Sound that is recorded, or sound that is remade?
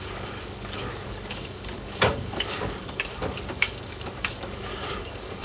remade